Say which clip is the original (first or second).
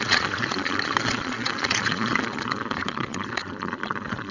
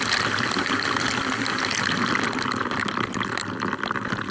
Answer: second